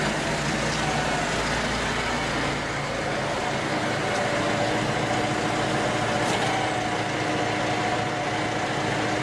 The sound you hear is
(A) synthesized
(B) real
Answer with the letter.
B